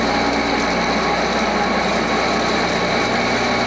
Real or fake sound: real